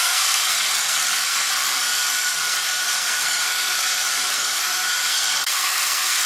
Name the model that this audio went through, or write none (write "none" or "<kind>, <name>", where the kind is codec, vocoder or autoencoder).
codec, SNAC